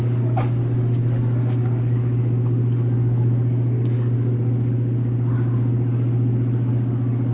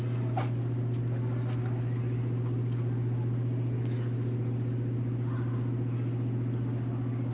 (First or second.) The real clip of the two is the second